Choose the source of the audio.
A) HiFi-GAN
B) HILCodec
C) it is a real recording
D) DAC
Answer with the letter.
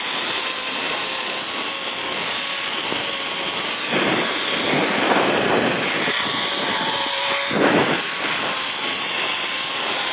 C